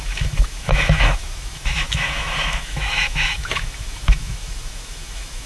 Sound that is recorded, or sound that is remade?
remade